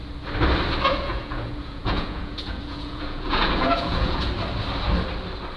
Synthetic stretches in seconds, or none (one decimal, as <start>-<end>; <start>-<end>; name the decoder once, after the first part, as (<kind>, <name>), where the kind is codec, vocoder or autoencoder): 0.9-4.3 (vocoder, Vocos)